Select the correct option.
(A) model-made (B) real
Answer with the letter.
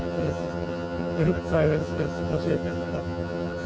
A